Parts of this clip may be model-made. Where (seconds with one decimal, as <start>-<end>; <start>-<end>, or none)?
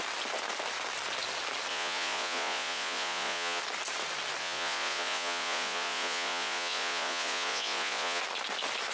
1.7-3.6; 4.4-8.2